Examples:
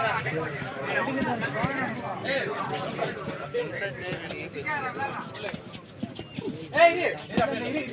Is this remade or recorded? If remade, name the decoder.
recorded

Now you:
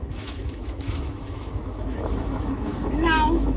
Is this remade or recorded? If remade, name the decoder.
remade, autoencoder, DAC-VAE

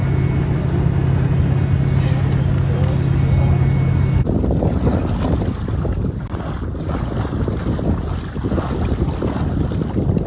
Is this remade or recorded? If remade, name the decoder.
recorded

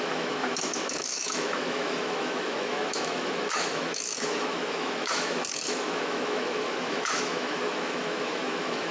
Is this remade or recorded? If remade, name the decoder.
remade, autoencoder, DAC-VAE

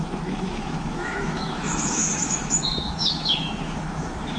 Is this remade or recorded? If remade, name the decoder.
remade, autoencoder, DAC-VAE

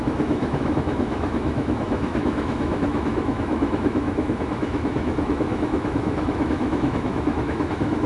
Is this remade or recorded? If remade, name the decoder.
remade, autoencoder, DAC-VAE